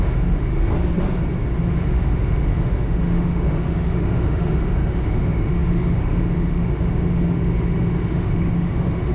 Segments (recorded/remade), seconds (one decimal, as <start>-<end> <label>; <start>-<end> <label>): 0.0-0.5 remade; 0.5-1.6 recorded; 1.6-9.1 remade